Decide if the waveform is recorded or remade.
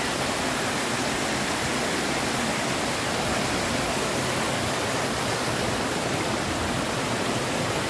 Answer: recorded